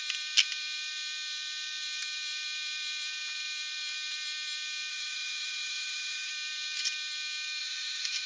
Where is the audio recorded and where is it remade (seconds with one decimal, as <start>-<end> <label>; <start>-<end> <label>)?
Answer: 0.0-4.9 recorded; 4.9-6.3 remade; 6.3-7.6 recorded; 7.6-8.3 remade